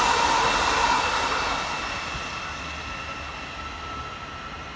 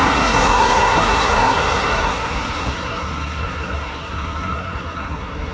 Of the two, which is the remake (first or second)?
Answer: second